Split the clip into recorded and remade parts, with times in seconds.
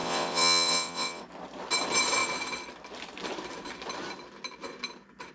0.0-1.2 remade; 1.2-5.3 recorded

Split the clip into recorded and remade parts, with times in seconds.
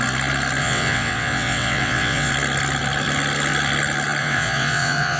0.0-0.6 recorded; 0.6-2.3 remade; 2.3-4.2 recorded; 4.2-5.2 remade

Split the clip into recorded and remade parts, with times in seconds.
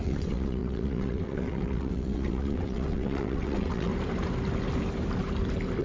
0.0-3.9 remade; 3.9-5.8 recorded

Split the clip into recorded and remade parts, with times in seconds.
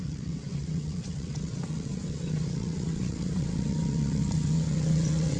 0.0-5.4 remade